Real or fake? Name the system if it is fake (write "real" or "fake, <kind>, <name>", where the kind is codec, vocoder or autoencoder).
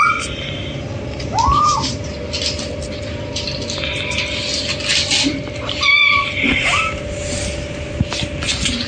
real